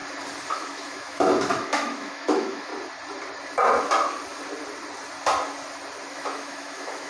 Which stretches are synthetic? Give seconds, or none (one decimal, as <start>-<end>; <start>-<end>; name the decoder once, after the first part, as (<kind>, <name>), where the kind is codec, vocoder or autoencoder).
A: 0.5-2.7 (autoencoder, DAC-VAE); 6.1-7.1